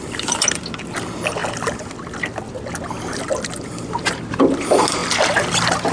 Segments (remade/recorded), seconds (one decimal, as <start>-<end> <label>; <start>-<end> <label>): 0.0-5.9 recorded